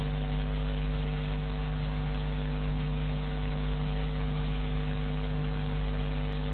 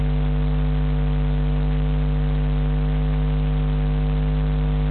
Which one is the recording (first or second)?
second